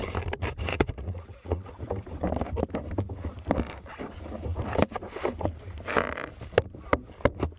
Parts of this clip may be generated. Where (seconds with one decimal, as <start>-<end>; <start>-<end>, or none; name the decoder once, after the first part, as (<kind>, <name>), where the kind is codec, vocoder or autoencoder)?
0.7-1.8 (vocoder, Vocos)